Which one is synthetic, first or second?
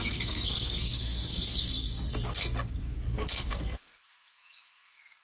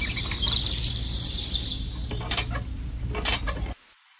first